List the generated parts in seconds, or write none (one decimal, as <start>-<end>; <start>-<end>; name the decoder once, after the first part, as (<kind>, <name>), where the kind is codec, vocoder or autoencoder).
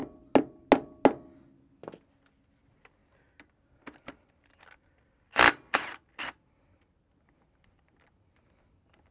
none